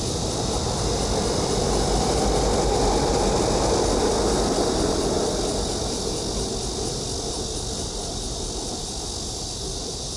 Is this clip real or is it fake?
real